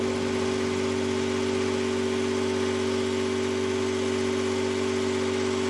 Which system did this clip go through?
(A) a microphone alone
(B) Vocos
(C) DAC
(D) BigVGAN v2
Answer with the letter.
A